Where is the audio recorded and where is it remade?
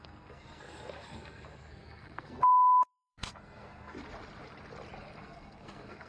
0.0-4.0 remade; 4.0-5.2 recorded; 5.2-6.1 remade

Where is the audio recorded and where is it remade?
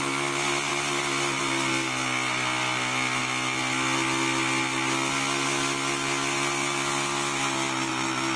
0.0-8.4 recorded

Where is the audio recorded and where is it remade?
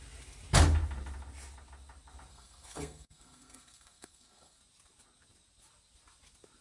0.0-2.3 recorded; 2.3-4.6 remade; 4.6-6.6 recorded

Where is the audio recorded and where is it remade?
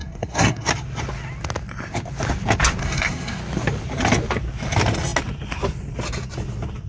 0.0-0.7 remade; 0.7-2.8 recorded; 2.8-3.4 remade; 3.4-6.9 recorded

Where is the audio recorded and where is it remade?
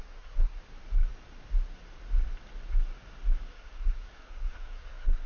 0.0-0.6 remade; 0.6-3.5 recorded; 3.5-5.3 remade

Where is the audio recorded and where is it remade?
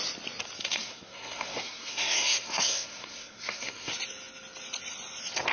0.0-0.6 recorded; 0.6-3.9 remade; 3.9-5.5 recorded